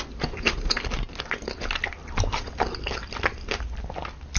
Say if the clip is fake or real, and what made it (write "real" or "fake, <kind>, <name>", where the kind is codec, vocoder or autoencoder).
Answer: real